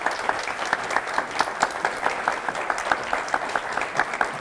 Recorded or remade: recorded